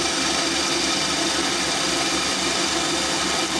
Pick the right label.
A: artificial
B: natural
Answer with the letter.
B